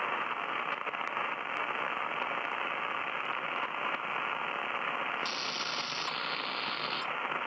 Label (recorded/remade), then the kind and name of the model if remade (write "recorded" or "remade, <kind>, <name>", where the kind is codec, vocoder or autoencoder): recorded